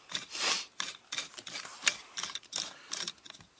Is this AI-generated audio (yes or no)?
no